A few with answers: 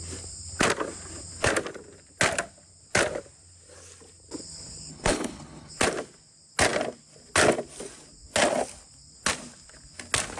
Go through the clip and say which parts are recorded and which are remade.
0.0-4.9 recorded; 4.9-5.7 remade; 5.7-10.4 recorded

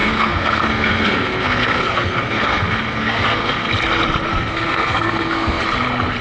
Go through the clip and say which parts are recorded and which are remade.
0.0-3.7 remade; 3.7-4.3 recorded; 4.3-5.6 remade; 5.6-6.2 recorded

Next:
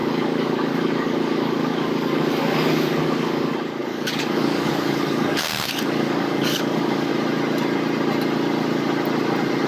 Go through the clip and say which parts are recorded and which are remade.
0.0-7.1 remade; 7.1-9.7 recorded